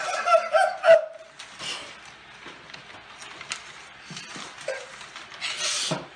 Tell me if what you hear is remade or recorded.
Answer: recorded